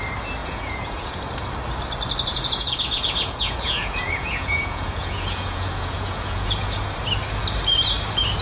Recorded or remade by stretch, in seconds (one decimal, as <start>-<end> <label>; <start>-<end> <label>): 0.0-0.4 recorded; 0.4-1.2 remade; 1.2-2.3 recorded; 2.3-6.8 remade; 6.8-8.4 recorded